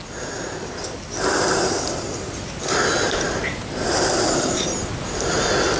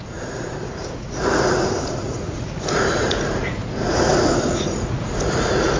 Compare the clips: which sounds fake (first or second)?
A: second